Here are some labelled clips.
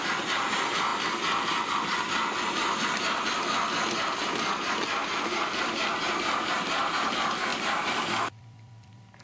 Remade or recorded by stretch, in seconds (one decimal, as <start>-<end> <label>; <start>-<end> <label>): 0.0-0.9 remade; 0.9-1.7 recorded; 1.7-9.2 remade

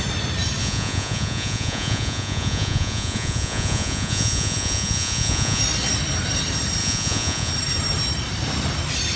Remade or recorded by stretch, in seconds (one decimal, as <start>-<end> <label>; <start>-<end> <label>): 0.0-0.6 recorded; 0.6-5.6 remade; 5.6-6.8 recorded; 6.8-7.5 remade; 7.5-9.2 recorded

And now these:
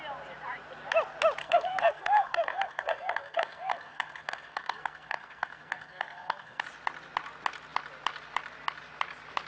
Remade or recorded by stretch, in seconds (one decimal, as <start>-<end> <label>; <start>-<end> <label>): 0.0-1.4 recorded; 1.4-6.6 remade; 6.6-9.5 recorded

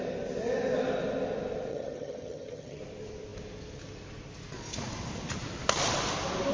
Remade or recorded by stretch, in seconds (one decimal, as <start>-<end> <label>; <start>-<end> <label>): 0.0-1.7 recorded; 1.7-2.8 remade; 2.8-6.5 recorded

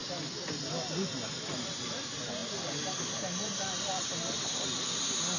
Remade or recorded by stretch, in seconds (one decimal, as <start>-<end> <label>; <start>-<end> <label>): 0.0-5.4 recorded

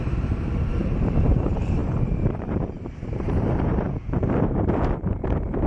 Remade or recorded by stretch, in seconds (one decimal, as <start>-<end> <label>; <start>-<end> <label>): 0.0-5.7 remade

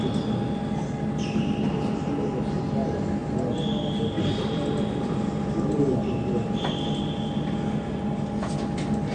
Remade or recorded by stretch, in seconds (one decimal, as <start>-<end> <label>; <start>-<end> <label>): 0.0-9.1 recorded